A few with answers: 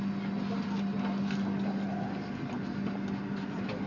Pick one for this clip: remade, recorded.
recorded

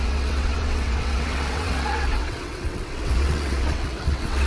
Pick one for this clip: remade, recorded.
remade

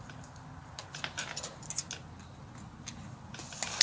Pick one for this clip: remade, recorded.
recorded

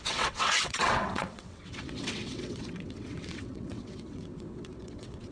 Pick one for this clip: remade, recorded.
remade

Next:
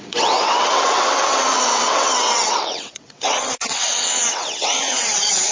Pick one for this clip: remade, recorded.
remade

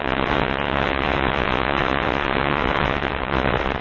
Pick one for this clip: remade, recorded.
remade